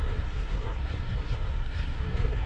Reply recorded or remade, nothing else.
remade